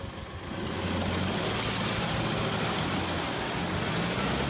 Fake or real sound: real